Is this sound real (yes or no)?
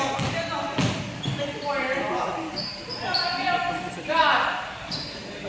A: yes